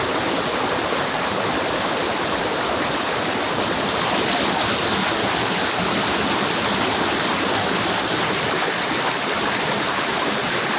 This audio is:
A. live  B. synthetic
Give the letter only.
A